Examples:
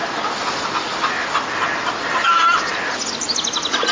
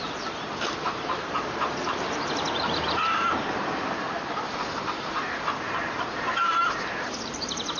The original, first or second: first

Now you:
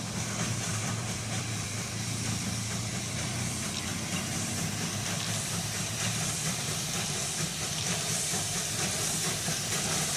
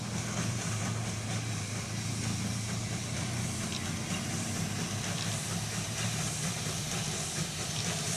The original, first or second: second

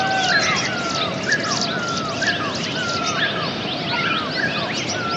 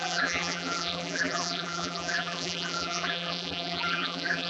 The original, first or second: first